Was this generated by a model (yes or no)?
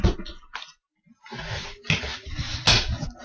no